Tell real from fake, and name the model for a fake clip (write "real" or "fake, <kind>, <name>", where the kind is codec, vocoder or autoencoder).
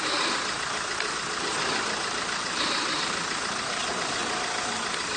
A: real